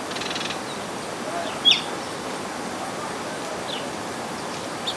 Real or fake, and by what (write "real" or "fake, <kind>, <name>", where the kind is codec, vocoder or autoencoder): real